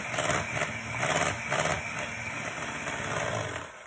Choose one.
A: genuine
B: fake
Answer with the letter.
A